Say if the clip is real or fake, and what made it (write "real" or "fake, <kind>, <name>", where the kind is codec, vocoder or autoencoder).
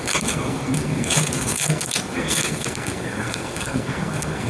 fake, codec, SNAC